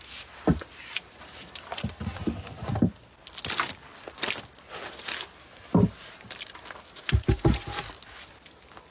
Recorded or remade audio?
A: recorded